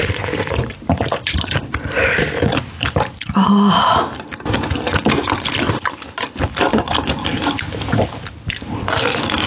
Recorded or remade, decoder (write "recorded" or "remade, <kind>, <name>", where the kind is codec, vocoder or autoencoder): recorded